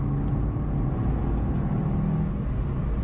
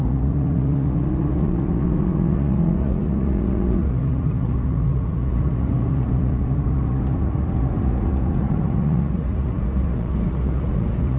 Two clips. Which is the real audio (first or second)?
first